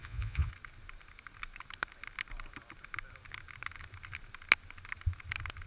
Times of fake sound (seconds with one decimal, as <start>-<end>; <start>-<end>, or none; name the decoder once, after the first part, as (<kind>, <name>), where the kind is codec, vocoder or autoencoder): 0.0-0.5 (vocoder, Vocos)